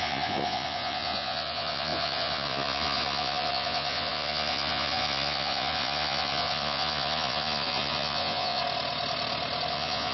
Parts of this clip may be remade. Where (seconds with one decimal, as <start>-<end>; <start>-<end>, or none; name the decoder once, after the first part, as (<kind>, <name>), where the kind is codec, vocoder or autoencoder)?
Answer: 0.0-8.6 (vocoder, Vocos); 9.7-10.1